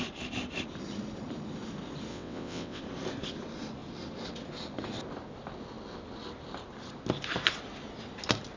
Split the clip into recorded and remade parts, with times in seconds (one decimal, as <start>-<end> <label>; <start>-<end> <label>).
0.0-2.1 recorded; 2.1-2.8 remade; 2.8-8.6 recorded